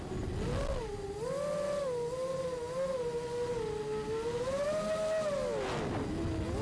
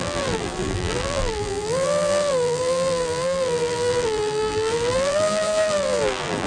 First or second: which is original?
first